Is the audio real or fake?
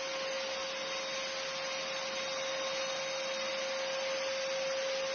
real